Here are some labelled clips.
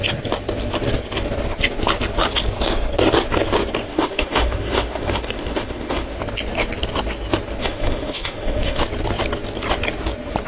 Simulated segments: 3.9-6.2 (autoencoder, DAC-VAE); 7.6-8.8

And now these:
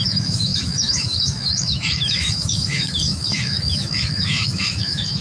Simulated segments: 0.0-5.2 (autoencoder, DAC-VAE)

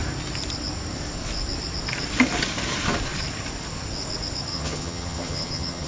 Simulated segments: 4.5-5.9 (vocoder, HiFi-GAN)

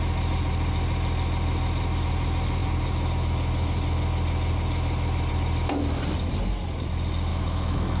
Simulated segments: 7.3-8.0 (autoencoder, DAC-VAE)

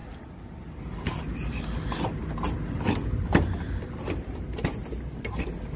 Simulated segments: none